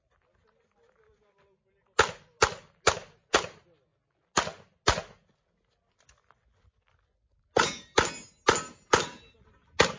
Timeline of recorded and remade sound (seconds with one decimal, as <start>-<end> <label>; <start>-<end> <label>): 0.0-10.0 recorded